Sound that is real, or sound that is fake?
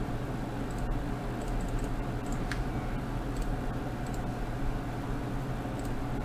real